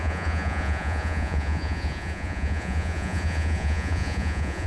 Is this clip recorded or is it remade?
remade